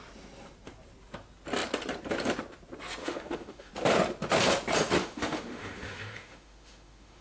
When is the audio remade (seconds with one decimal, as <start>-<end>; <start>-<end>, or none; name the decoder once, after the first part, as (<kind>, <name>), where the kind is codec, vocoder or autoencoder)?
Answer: 3.0-3.7 (autoencoder, DAC-VAE); 5.0-7.2